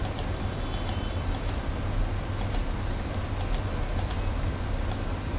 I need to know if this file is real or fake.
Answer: real